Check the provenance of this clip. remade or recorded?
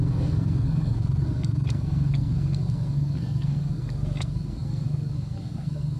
remade